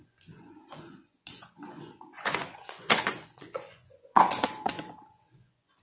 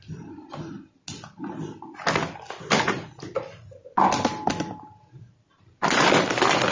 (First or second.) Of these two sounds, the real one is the second